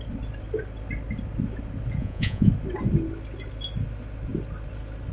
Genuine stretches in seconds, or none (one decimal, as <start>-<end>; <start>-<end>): 0.0-2.0; 2.5-5.1